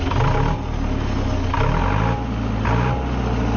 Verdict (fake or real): real